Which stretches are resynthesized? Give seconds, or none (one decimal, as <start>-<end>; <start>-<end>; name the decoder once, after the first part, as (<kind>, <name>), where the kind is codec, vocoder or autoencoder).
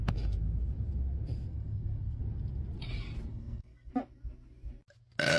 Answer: 1.5-2.2 (codec, SNAC); 3.3-3.9